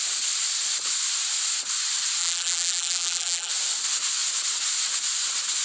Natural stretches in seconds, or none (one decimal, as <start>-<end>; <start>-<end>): 0.0-2.2; 3.5-5.6